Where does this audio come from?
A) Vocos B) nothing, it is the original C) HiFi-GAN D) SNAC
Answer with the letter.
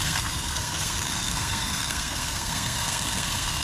D